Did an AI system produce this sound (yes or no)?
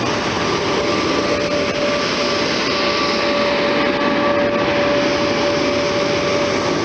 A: no